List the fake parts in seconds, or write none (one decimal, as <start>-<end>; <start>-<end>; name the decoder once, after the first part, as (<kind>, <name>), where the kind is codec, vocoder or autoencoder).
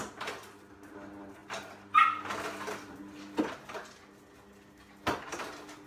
none